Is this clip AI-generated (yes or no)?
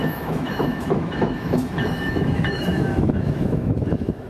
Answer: yes